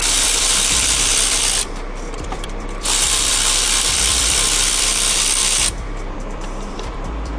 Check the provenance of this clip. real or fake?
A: fake